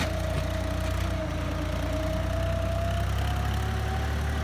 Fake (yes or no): no